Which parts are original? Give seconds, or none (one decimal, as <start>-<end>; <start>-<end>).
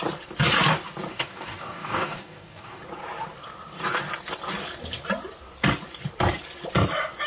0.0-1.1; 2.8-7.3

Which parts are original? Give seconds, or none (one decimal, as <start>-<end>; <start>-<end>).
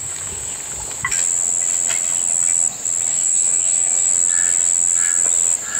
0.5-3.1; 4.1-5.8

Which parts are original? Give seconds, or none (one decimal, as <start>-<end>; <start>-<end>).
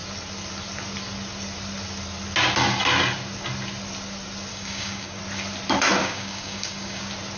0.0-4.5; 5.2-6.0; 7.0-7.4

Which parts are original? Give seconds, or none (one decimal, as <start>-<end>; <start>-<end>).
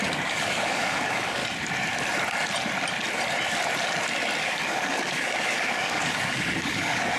1.4-4.4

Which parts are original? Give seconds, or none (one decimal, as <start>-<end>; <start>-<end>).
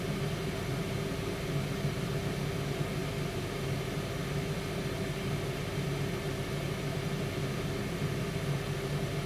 0.0-9.3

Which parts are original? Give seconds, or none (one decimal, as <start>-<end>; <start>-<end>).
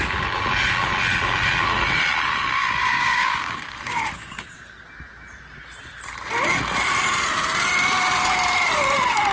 0.0-2.9; 4.6-9.3